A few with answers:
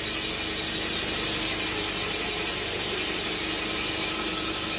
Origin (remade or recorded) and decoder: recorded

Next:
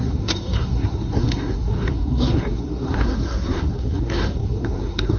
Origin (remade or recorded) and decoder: remade, codec, SNAC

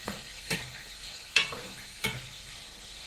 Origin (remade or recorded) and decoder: remade, codec, SNAC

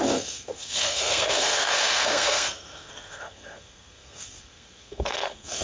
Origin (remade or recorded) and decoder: remade, codec, SNAC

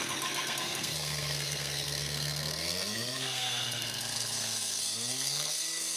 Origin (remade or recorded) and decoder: remade, codec, SNAC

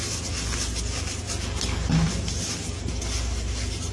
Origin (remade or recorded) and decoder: recorded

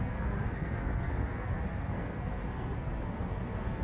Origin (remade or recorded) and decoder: remade, codec, SNAC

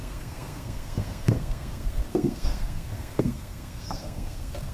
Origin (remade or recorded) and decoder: remade, codec, SNAC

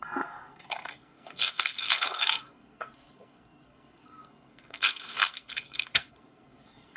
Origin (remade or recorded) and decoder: remade, codec, SNAC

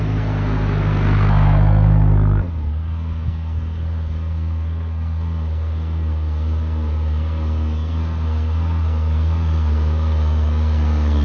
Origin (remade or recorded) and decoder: remade, codec, SNAC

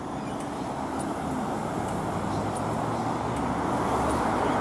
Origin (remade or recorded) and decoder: recorded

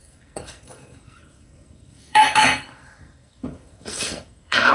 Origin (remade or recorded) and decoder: remade, codec, SNAC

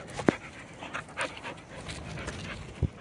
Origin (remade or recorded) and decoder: recorded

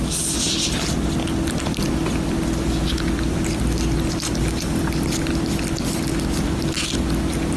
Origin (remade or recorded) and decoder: recorded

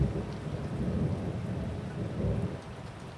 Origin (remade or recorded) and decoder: recorded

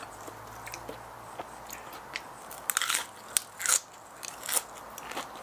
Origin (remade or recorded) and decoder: recorded